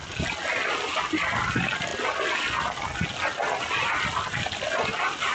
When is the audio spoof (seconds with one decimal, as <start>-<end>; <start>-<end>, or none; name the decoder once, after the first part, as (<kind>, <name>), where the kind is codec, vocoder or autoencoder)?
none